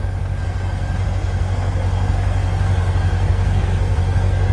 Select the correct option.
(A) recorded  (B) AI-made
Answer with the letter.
B